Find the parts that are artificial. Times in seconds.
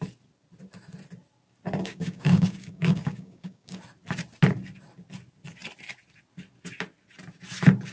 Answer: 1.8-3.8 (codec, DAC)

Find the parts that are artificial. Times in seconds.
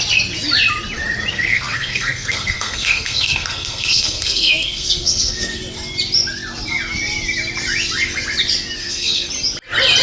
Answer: 1.3-5.6 (codec, SNAC); 8.8-9.3